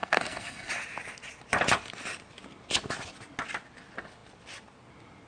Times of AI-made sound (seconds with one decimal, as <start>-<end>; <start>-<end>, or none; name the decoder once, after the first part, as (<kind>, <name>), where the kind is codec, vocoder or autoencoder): 0.0-0.7 (codec, SNAC)